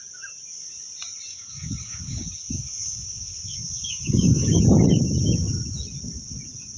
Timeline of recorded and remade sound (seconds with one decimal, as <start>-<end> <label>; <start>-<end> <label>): 0.0-1.3 recorded; 1.3-4.6 remade; 4.6-6.8 recorded